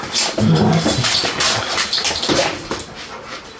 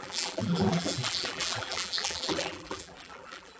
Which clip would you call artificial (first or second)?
second